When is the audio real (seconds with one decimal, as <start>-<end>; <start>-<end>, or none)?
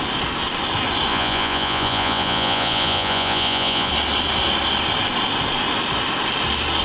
0.0-1.1; 3.9-6.8